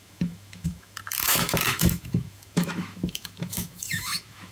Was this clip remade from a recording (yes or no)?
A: yes